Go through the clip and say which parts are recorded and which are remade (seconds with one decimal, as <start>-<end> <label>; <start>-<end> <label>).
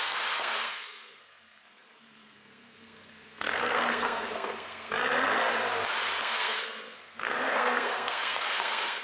0.0-4.9 remade; 4.9-6.2 recorded; 6.2-9.0 remade